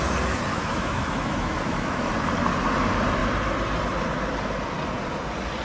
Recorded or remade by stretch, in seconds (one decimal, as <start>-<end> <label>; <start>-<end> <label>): 0.0-0.5 recorded; 0.5-2.1 remade; 2.1-5.6 recorded